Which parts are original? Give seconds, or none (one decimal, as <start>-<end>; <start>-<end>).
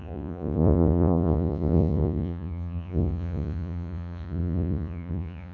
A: none